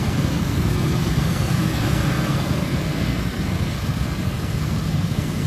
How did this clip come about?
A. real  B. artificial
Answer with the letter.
B